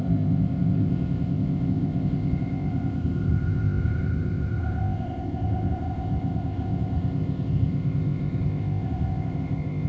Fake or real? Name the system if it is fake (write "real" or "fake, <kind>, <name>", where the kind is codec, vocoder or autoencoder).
fake, codec, ZipCodec